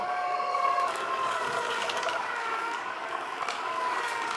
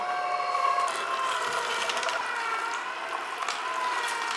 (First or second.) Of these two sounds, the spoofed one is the first